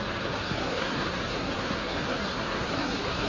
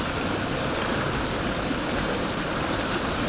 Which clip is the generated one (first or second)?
first